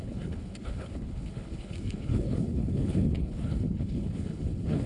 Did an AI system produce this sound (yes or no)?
yes